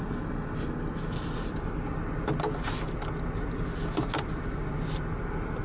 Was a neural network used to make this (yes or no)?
no